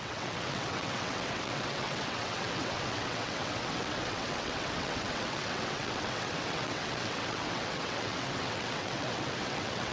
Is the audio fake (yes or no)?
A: yes